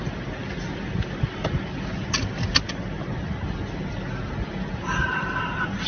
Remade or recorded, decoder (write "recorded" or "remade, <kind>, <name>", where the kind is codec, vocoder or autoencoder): recorded